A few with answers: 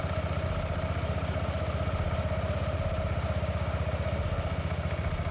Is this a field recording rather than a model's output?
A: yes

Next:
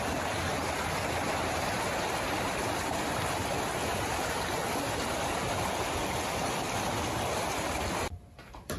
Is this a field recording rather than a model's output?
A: yes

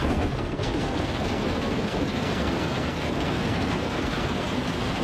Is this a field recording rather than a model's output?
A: no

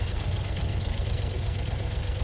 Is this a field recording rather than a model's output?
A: no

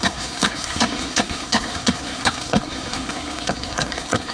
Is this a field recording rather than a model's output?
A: no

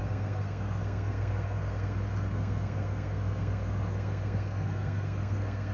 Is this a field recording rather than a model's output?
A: no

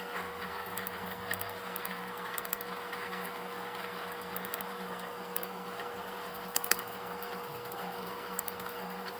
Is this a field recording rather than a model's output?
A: no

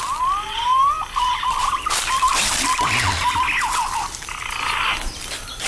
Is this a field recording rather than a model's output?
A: yes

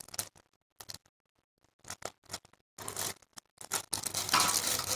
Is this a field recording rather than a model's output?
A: yes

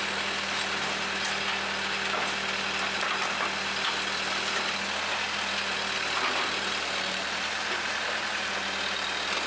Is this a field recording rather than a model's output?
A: yes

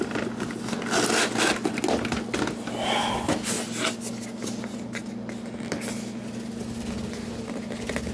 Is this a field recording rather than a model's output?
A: yes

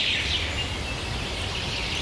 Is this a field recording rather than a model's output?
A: yes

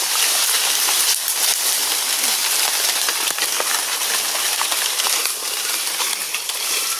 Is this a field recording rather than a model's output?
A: yes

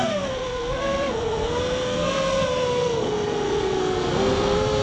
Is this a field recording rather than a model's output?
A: no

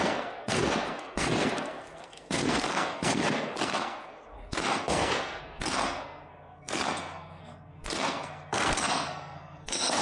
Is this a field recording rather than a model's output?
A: no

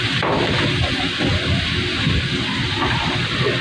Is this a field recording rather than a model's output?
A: yes